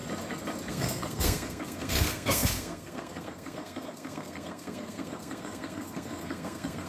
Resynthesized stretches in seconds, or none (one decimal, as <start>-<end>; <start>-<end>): 0.7-6.9